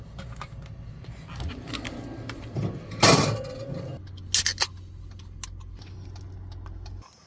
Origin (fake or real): real